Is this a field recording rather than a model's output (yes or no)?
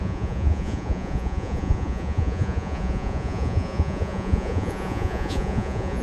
no